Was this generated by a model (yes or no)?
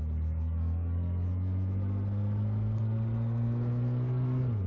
yes